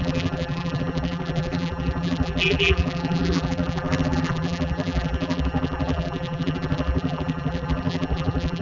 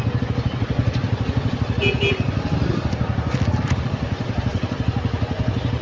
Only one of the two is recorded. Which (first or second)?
second